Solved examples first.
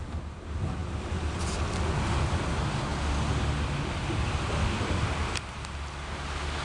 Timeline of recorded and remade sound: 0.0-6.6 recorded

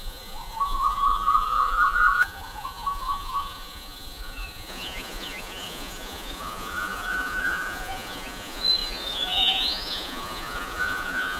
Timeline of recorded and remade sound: 0.0-11.4 remade

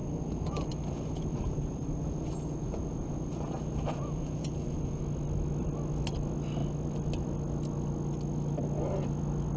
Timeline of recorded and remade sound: 0.0-5.0 remade; 5.0-9.6 recorded

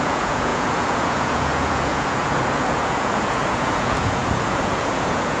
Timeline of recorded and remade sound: 0.0-5.4 remade